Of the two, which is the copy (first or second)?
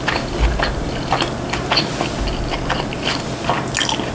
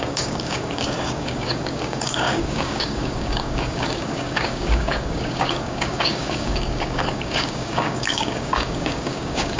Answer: second